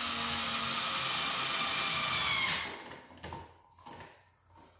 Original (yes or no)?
yes